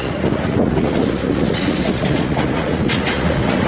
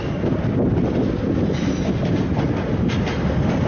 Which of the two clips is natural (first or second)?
second